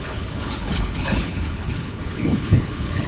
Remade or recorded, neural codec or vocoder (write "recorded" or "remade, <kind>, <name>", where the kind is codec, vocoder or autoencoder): remade, codec, HILCodec